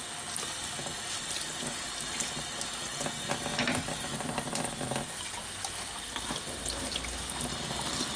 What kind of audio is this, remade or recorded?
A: recorded